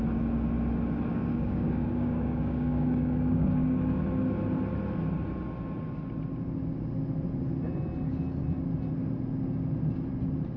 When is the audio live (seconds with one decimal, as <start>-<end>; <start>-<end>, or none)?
0.0-1.1; 4.0-10.6